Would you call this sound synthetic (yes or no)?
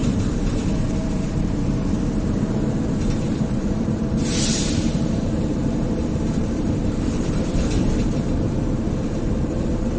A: yes